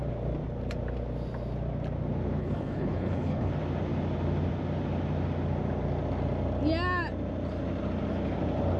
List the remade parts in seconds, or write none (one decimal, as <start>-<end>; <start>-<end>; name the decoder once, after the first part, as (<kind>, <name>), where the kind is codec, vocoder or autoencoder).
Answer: 2.4-3.5 (codec, HILCodec)